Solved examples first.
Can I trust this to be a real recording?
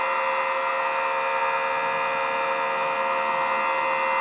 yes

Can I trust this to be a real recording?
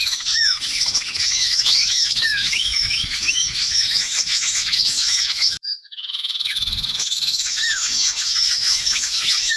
no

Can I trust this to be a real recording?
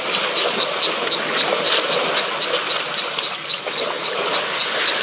yes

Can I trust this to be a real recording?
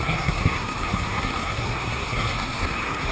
no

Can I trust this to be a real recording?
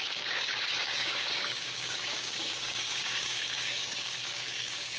no